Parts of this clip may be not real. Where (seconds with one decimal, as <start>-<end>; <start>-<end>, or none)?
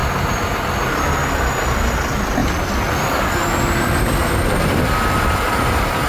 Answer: none